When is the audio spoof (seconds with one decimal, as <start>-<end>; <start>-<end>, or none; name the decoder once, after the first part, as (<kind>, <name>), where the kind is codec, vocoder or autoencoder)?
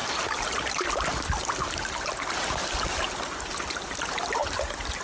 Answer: none